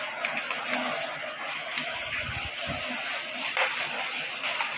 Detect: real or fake real